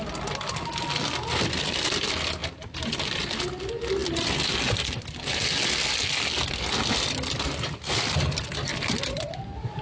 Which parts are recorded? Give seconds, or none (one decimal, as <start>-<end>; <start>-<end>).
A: 0.0-9.8